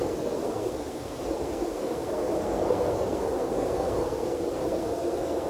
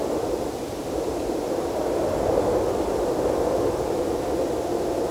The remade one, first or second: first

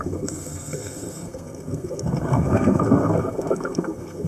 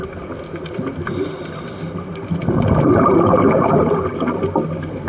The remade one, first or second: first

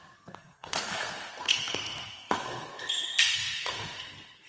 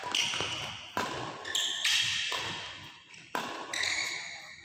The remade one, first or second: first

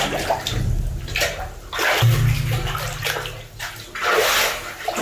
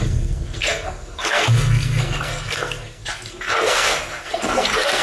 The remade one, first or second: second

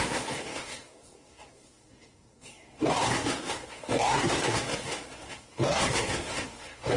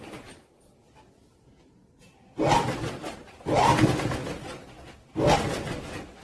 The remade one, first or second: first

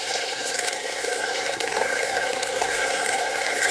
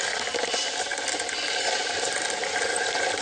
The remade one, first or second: first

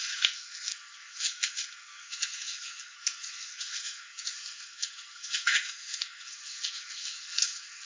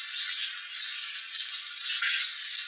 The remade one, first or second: first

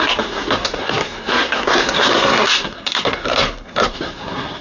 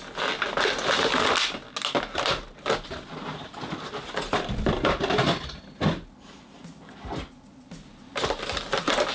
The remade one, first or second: first